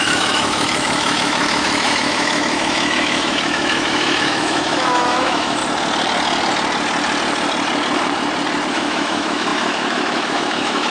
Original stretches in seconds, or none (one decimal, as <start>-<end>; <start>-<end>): 5.6-8.7